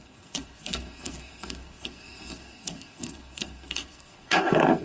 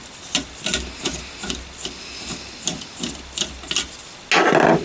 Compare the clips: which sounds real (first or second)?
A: second